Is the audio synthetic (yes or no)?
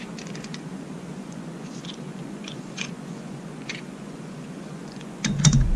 yes